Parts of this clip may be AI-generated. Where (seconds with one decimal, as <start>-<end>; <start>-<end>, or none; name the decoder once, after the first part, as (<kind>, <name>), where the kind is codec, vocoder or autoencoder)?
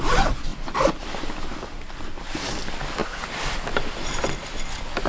0.5-1.0 (vocoder, BigVGAN v2)